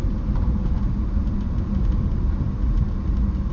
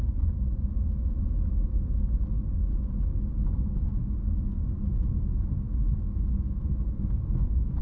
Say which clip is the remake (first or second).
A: first